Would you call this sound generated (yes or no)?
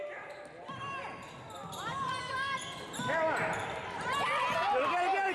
no